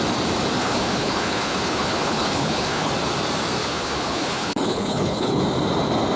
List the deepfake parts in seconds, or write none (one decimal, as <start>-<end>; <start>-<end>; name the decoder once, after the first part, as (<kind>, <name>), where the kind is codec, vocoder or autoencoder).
0.6-2.9 (codec, HILCodec); 3.6-5.4